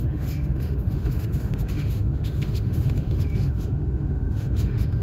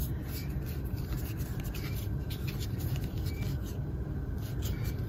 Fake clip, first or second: first